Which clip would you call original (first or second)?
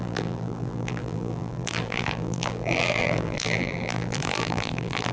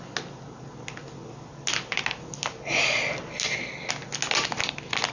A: second